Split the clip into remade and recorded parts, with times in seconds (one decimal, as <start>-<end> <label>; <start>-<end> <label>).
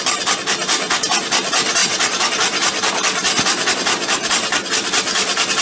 0.0-5.6 recorded